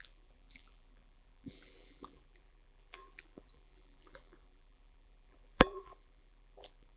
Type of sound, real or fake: fake